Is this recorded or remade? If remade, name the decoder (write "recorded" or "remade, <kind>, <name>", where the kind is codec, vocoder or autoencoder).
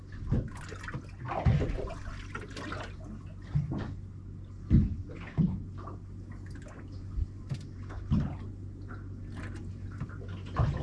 recorded